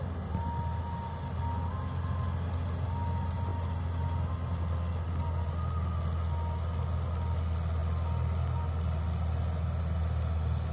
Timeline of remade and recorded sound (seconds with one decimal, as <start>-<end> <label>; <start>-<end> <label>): 0.0-10.7 recorded